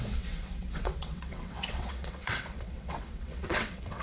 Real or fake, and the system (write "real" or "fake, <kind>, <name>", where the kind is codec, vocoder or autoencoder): fake, vocoder, WaveNeXt